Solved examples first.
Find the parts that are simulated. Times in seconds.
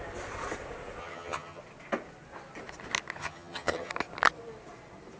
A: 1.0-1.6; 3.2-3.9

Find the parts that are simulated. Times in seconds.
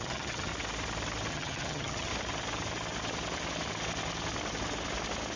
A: 0.0-0.5; 1.3-2.1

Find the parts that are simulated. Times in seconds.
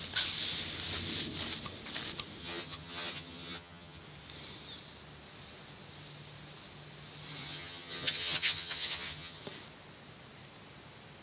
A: 2.4-4.0; 7.4-9.4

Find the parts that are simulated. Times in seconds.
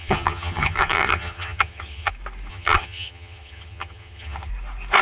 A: 0.0-2.1; 2.5-4.5